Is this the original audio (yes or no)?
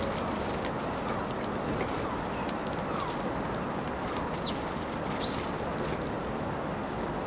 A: yes